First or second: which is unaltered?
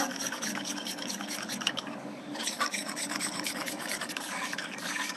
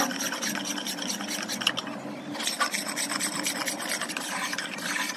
second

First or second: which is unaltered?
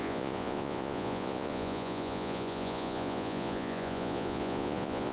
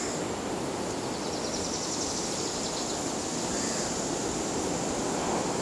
second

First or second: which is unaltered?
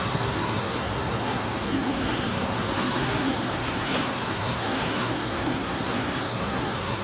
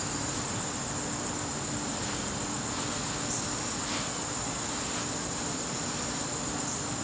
second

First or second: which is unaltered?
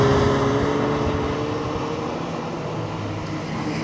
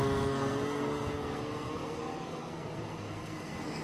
first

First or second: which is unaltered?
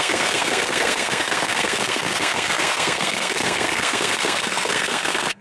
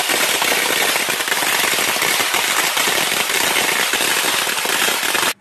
second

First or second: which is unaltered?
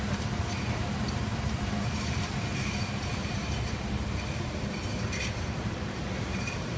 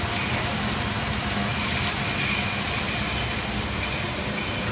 second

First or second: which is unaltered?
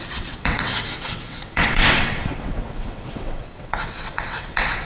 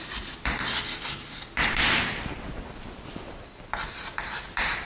second